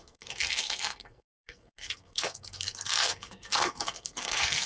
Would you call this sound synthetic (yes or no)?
yes